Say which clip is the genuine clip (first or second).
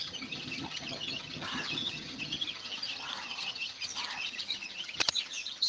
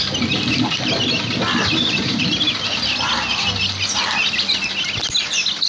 second